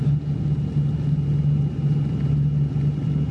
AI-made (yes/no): no